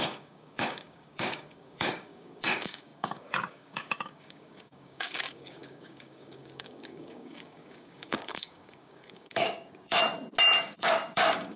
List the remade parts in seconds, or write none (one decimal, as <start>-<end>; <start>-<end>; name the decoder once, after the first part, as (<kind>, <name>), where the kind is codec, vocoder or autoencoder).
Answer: 0.0-10.0 (codec, DAC); 10.7-11.6